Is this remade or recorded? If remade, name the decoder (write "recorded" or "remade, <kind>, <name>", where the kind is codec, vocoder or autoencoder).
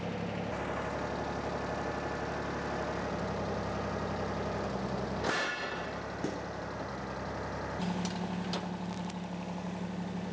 recorded